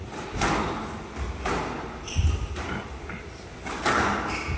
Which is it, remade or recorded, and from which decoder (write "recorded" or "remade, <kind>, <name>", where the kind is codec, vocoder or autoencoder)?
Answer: recorded